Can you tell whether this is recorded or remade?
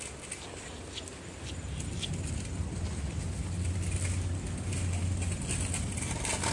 recorded